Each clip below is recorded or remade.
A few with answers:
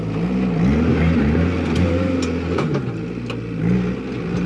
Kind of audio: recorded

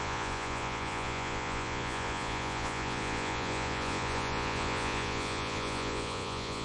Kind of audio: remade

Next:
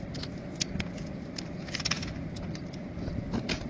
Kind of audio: recorded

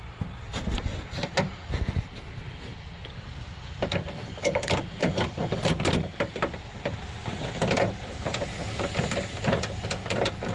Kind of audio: recorded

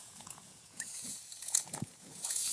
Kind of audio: remade